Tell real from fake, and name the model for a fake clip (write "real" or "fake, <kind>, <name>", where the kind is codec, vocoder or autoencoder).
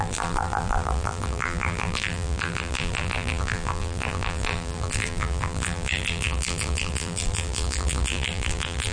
fake, vocoder, BigVGAN v2